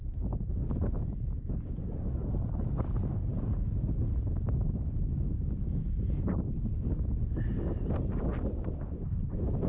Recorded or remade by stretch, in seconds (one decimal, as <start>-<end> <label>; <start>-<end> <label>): 0.0-2.2 recorded; 2.2-2.9 remade; 2.9-8.3 recorded; 8.3-9.7 remade